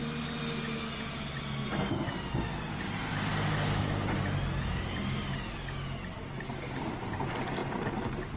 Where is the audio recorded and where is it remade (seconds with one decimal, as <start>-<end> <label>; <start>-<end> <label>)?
0.0-7.6 recorded; 7.6-8.4 remade